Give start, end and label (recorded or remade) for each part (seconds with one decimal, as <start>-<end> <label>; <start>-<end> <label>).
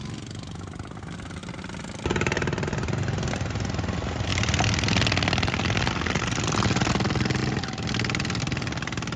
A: 0.0-9.2 recorded